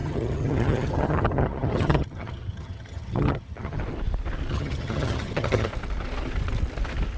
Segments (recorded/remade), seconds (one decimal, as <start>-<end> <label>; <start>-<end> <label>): 0.0-3.8 remade; 3.8-4.5 recorded; 4.5-5.7 remade; 5.7-7.2 recorded

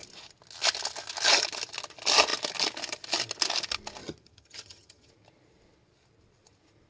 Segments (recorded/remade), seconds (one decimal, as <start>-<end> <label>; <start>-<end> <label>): 0.0-4.0 recorded; 4.0-5.1 remade; 5.1-6.9 recorded

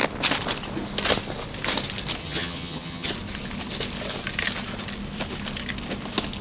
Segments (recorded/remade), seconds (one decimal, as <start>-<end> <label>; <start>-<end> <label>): 0.0-2.2 recorded; 2.2-3.1 remade; 3.1-6.4 recorded

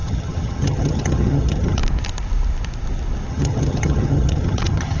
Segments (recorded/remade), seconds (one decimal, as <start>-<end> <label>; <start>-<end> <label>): 0.0-1.8 remade; 1.8-3.3 recorded; 3.3-5.0 remade